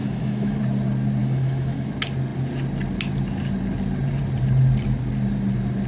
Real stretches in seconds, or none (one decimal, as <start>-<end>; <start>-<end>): 0.6-1.2; 1.9-5.9

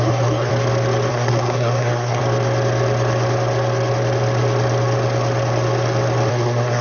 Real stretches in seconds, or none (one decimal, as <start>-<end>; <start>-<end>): 0.5-1.1; 2.2-6.3

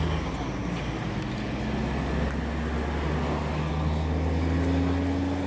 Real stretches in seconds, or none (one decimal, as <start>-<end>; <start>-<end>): 0.0-5.5

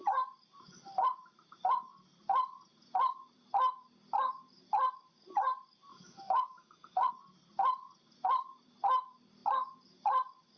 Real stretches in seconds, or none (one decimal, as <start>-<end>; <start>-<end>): 0.0-5.9; 7.1-10.6

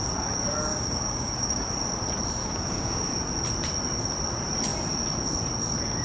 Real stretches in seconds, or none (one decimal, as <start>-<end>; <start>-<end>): 0.0-0.7; 1.7-2.4; 3.1-6.0

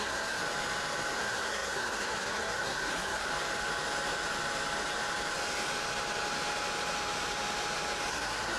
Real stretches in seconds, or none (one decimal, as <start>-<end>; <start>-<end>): 0.4-1.2; 3.3-8.1

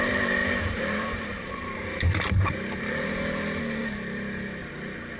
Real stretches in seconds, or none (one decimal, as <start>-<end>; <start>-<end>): none